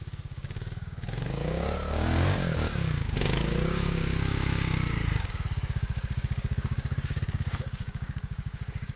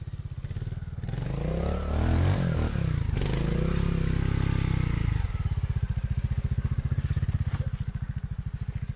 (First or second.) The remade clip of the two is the first